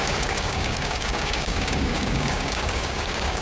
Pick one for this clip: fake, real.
fake